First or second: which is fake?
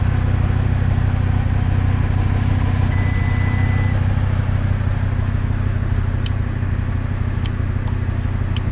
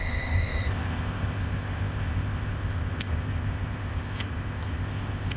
second